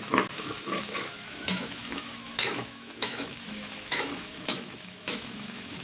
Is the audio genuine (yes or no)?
no